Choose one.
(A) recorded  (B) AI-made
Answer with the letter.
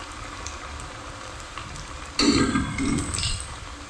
B